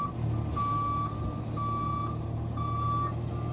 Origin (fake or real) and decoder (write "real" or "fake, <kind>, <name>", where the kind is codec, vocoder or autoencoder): real